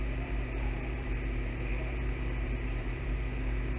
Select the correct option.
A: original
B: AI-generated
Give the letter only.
B